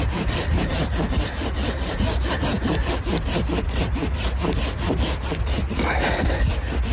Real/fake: real